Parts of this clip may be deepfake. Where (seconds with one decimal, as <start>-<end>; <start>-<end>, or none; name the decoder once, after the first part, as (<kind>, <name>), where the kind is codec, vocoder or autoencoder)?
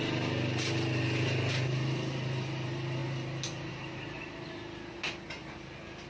none